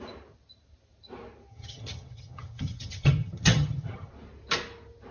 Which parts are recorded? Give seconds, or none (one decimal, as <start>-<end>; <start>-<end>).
0.0-1.5; 4.1-5.1